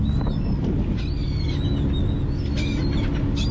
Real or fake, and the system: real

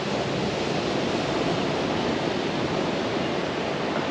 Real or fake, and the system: real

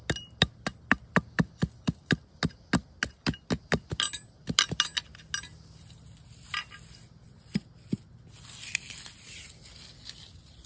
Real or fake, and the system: real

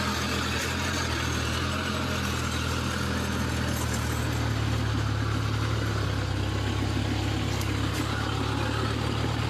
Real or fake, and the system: real